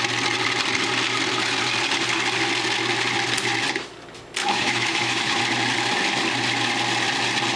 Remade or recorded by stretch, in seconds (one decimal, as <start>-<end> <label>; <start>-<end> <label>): 0.0-4.4 recorded; 4.4-5.4 remade; 5.4-7.6 recorded